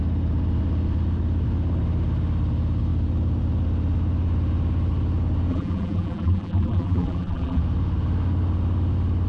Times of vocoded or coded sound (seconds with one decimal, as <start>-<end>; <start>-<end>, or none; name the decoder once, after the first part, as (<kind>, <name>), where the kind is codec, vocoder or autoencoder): 5.5-7.6 (vocoder, BigVGAN v2)